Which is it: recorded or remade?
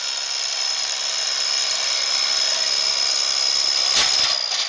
recorded